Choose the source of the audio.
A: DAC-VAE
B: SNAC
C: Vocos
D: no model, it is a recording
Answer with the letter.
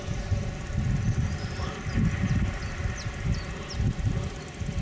D